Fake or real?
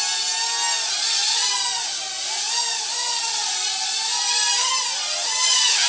real